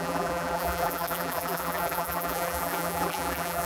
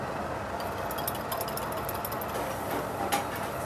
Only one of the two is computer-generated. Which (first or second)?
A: first